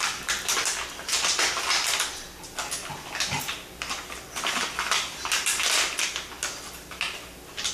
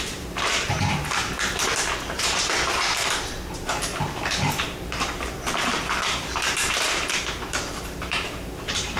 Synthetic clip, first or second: second